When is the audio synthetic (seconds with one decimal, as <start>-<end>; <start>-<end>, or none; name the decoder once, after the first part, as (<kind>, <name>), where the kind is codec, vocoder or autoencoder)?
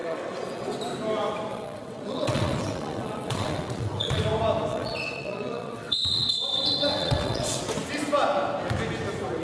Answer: 0.0-0.8 (vocoder, WaveNeXt); 1.5-4.2; 4.7-7.6